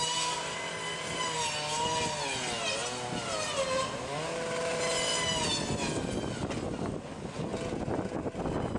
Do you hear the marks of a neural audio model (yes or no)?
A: no